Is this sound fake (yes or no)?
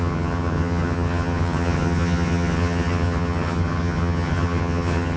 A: yes